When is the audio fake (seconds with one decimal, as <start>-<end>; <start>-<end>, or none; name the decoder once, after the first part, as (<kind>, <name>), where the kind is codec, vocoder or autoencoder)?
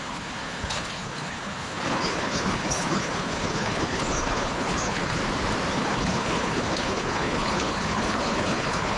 0.0-5.2 (codec, HILCodec); 5.7-9.0